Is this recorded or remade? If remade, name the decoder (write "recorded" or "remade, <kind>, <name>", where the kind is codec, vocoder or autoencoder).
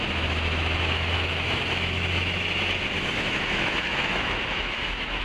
remade, autoencoder, DAC-VAE